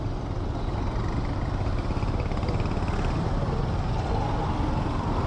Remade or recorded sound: recorded